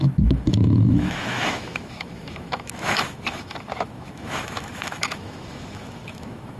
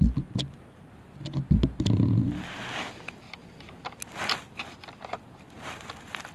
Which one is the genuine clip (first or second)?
second